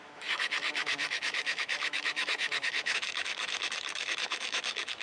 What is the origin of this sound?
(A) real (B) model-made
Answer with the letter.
B